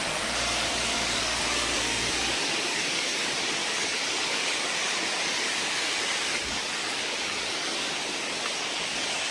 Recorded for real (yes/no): no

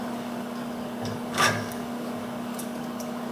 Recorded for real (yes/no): no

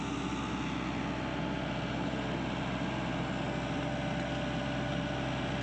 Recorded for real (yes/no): yes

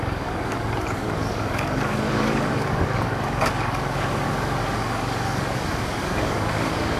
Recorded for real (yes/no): no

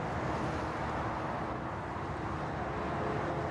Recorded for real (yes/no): yes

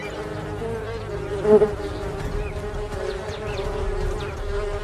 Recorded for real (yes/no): yes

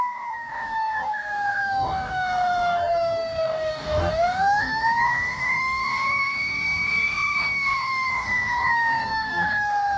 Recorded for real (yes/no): no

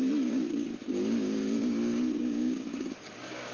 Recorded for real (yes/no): no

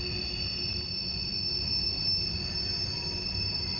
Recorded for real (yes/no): yes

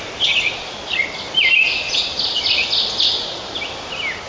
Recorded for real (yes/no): yes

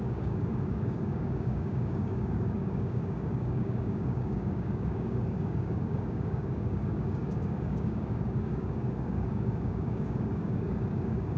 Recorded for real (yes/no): no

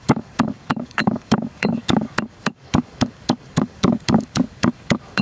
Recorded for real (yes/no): no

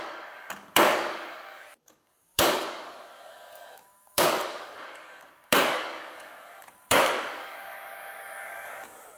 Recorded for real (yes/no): no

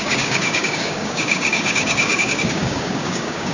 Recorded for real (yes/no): no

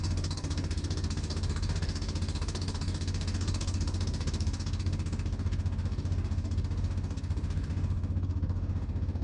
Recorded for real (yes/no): no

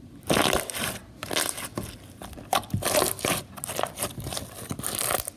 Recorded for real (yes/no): yes